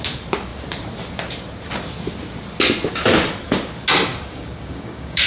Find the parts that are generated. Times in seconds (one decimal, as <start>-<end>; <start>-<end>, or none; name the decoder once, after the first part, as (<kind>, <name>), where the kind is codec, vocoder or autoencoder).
4.1-5.3 (codec, DAC)